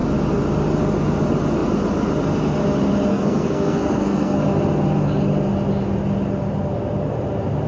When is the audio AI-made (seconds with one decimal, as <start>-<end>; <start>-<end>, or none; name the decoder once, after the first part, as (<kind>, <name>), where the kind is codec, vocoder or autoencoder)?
3.1-4.4 (codec, SNAC)